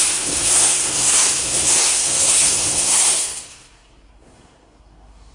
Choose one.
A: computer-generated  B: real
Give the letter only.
A